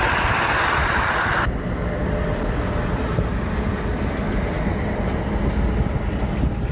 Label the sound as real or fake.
real